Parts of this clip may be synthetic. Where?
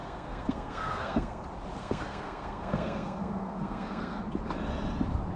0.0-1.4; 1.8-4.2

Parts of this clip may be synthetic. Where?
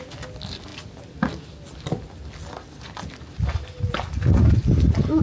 none